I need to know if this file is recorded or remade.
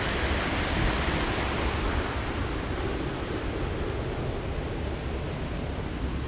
recorded